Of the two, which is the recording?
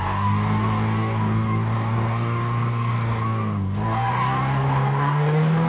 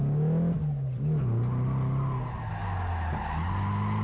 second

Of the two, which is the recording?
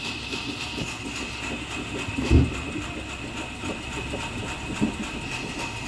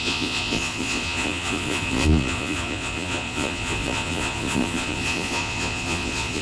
first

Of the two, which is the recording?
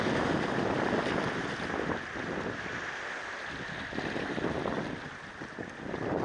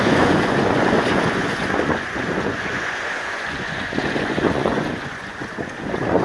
first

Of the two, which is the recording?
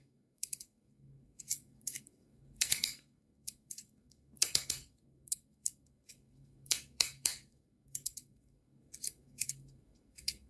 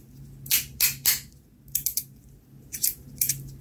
second